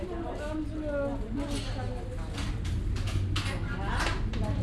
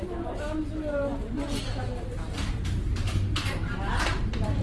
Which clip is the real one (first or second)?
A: first